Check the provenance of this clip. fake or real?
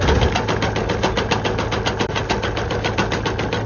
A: real